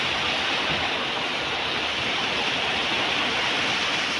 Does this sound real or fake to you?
real